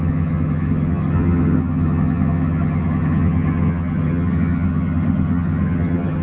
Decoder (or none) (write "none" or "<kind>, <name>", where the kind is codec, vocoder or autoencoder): vocoder, HiFi-GAN